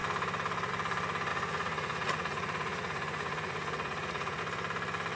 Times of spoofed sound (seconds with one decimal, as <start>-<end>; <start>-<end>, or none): 1.3-4.4